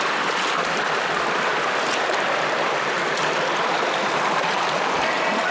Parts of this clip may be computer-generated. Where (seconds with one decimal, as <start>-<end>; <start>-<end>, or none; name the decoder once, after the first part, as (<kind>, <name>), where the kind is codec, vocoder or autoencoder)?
none